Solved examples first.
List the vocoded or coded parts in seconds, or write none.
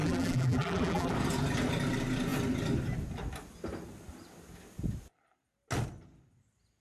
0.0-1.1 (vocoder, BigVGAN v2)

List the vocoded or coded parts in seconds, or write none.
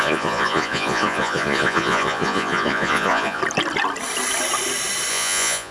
0.0-3.4 (vocoder, Vocos); 5.1-5.7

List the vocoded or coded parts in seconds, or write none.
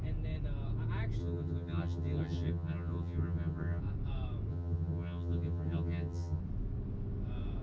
1.2-3.8 (vocoder, HiFi-GAN); 4.5-6.4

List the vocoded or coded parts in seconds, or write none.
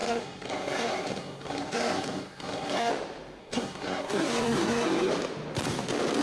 0.0-2.9 (codec, SNAC); 3.4-5.1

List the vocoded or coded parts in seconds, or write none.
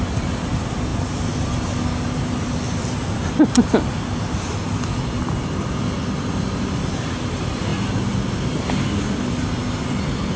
none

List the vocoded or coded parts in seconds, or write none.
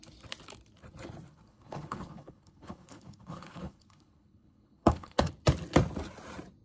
1.3-5.3 (codec, HILCodec)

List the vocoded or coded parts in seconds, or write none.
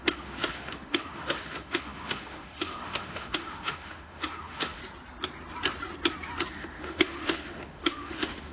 0.0-4.8 (autoencoder, DAC-VAE); 6.5-8.5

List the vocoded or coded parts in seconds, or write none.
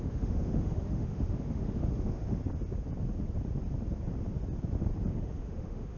0.0-2.4 (autoencoder, DAC-VAE); 5.1-6.0